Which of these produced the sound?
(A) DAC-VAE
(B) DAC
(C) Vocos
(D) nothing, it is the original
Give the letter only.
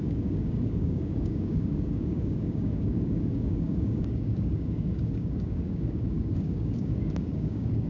B